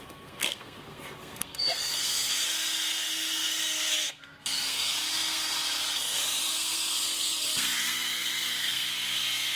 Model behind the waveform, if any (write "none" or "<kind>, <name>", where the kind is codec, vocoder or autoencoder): codec, SNAC